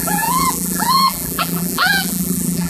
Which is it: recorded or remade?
remade